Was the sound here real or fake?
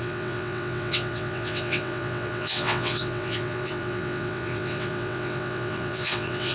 fake